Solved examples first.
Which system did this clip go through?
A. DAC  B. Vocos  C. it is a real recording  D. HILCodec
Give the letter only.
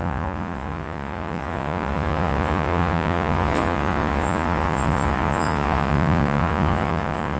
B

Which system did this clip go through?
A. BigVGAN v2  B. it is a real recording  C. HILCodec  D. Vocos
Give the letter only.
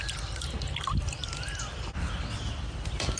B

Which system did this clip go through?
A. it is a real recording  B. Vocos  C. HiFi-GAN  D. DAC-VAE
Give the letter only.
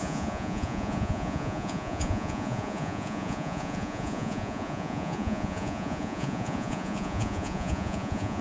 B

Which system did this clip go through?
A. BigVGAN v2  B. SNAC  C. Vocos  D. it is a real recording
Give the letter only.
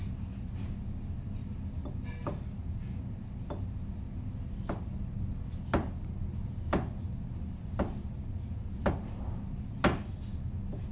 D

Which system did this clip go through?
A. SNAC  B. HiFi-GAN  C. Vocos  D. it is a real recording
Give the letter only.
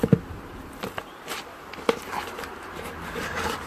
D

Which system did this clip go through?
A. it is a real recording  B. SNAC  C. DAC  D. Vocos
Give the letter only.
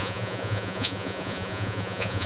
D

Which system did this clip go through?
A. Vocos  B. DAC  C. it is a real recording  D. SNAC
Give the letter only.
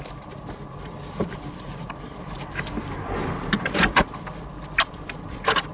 C